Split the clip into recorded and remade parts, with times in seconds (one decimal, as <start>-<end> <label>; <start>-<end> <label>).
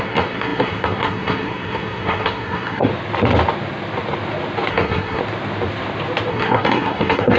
0.0-2.9 remade; 2.9-4.7 recorded; 4.7-5.2 remade; 5.2-6.3 recorded; 6.3-7.4 remade